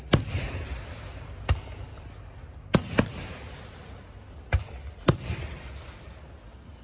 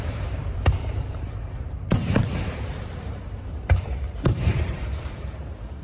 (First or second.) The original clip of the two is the first